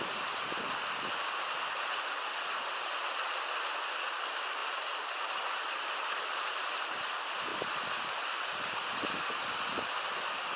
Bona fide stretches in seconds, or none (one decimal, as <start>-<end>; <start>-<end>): 0.0-10.6

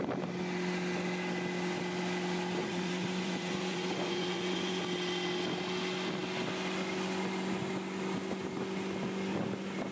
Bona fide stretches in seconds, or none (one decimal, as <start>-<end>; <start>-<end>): 0.0-2.6; 4.8-9.9

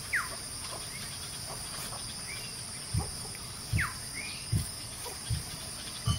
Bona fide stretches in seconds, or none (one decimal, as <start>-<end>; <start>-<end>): 0.0-4.3; 5.1-6.2